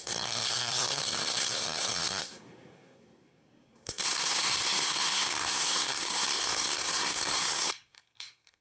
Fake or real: fake